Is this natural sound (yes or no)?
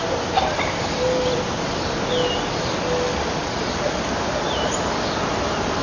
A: yes